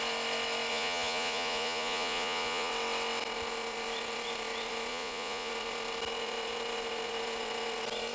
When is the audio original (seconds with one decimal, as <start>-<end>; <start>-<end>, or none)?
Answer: 0.0-0.7; 2.7-4.9; 5.5-8.1

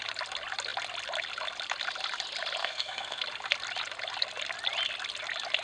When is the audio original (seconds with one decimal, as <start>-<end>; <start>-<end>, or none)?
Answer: 0.0-2.6; 3.2-5.6

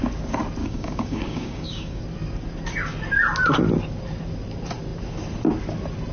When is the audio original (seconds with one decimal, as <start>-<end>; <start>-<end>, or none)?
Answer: 0.0-0.6; 2.0-6.1

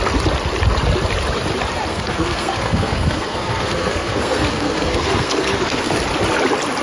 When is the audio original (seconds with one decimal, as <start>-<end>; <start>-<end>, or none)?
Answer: 0.0-1.9; 6.0-6.8

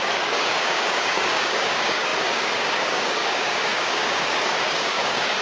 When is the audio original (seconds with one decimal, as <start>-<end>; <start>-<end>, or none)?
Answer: none

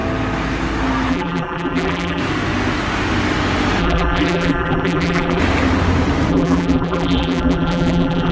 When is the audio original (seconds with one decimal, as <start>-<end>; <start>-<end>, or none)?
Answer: 0.0-1.1; 2.2-3.8; 5.4-6.3